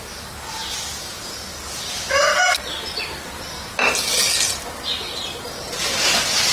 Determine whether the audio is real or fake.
real